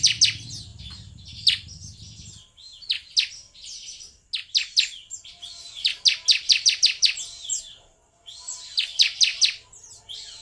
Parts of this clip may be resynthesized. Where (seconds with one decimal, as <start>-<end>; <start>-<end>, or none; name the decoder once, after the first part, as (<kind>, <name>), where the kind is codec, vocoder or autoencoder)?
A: 6.3-7.6 (vocoder, BigVGAN v2); 9.3-10.4